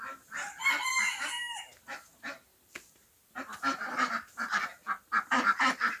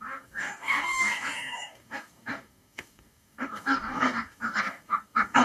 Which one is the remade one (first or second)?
second